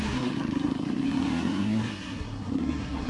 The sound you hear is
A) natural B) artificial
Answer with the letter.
B